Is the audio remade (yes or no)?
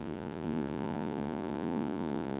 yes